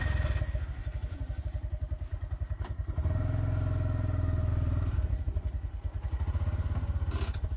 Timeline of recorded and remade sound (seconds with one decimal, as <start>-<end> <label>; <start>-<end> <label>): 0.0-0.8 recorded; 0.8-1.4 remade; 1.4-2.1 recorded; 2.1-3.1 remade; 3.1-4.5 recorded; 4.5-5.1 remade; 5.1-7.6 recorded